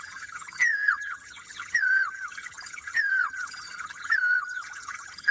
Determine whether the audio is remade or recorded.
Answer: remade